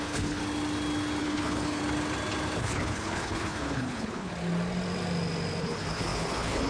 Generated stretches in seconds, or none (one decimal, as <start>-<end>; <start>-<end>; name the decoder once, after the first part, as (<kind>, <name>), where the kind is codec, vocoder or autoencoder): 0.0-0.4 (codec, HILCodec); 1.2-1.8; 2.6-4.3; 5.6-6.7